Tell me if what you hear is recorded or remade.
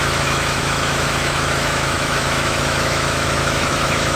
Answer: remade